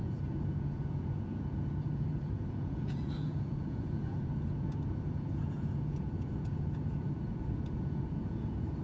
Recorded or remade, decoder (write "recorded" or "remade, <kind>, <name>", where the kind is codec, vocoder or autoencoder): remade, vocoder, Vocos